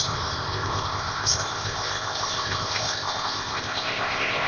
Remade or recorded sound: remade